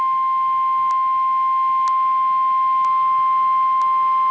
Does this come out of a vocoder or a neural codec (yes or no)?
no